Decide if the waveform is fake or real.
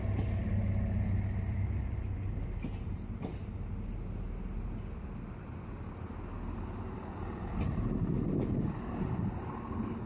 real